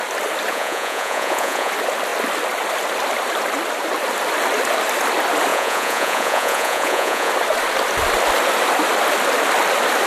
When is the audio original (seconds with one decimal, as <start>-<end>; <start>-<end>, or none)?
0.0-0.5; 1.7-5.5; 7.3-10.1